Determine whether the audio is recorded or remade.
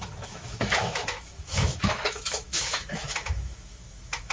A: remade